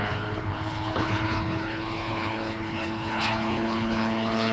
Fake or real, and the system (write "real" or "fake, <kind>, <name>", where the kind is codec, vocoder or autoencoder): fake, codec, HILCodec